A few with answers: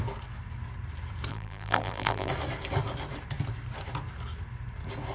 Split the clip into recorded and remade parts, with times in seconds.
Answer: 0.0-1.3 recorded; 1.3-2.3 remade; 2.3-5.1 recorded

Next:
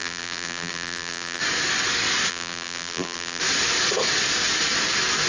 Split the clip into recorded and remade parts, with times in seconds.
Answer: 0.0-1.4 remade; 1.4-2.3 recorded; 2.3-3.4 remade; 3.4-5.3 recorded

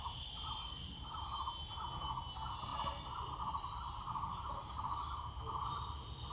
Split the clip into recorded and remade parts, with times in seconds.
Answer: 0.0-6.3 recorded

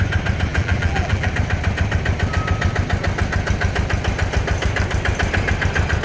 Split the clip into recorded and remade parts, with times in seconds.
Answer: 0.0-0.5 recorded; 0.5-1.3 remade; 1.3-6.0 recorded

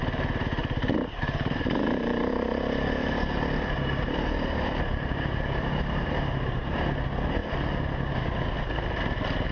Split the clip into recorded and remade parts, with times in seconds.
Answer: 0.0-0.6 recorded; 0.6-2.3 remade; 2.3-3.0 recorded; 3.0-6.8 remade; 6.8-9.5 recorded

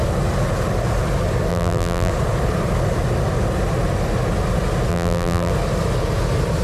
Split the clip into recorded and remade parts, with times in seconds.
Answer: 0.0-1.5 recorded; 1.5-2.1 remade; 2.1-4.9 recorded; 4.9-5.5 remade; 5.5-6.6 recorded